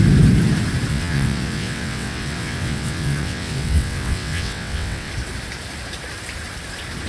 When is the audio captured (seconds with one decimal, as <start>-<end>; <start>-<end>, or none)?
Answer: 0.0-0.9; 5.1-7.1